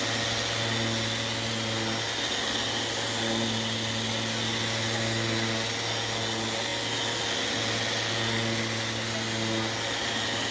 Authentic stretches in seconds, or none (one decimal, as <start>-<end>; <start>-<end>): 0.0-10.5